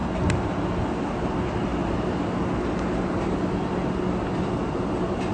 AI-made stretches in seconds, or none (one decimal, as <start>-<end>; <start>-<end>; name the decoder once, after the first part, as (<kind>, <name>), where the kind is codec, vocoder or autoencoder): none